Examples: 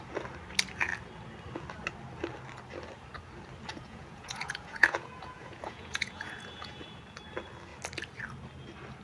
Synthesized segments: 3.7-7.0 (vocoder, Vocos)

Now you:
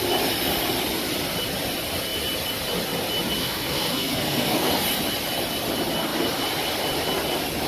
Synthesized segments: 3.4-4.7 (codec, SNAC)

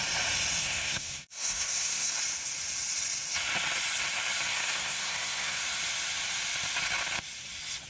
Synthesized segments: 0.6-2.1 (codec, SNAC); 4.5-5.6